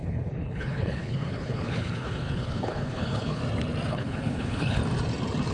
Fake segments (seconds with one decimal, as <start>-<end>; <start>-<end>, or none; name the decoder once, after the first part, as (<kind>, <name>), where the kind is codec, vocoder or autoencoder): 0.0-3.4 (codec, HILCodec); 3.9-4.8